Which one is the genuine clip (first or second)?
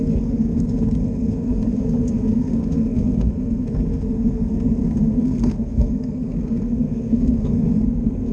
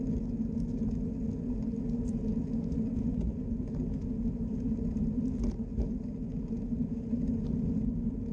second